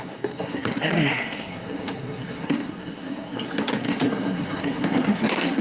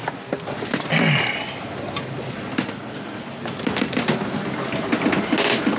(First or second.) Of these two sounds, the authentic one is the second